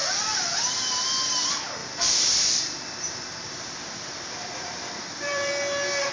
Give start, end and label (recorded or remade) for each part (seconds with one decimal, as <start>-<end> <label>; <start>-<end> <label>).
0.0-0.5 remade; 0.5-1.8 recorded; 1.8-5.5 remade; 5.5-6.1 recorded